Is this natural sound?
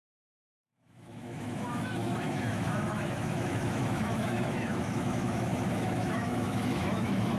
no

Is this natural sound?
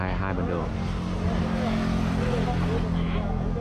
yes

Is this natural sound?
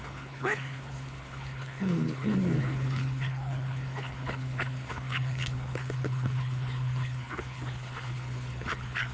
no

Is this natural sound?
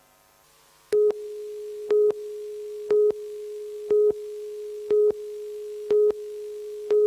yes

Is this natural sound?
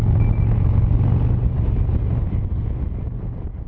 yes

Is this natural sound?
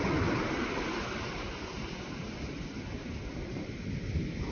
yes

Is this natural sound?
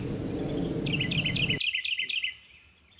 yes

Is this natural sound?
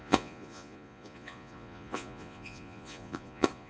no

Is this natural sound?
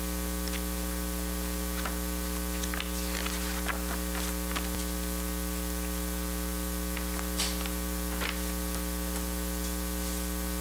yes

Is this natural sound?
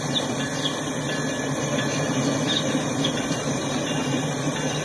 no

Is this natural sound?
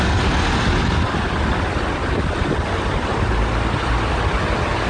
yes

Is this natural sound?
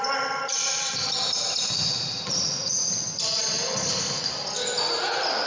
yes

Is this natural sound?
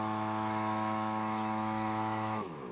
no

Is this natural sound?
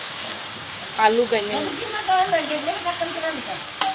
no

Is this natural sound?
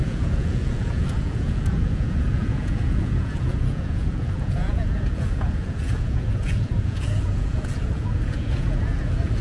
no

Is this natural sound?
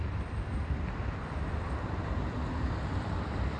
no